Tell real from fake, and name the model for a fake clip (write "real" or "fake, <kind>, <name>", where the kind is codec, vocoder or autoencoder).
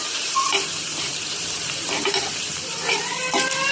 fake, vocoder, BigVGAN v2